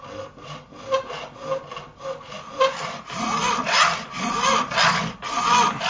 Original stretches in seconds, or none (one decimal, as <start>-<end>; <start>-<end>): 0.0-5.9